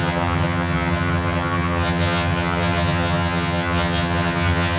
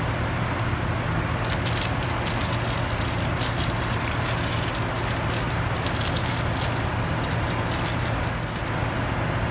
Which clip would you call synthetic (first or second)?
first